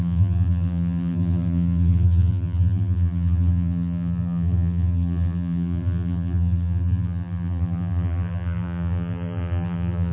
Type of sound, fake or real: fake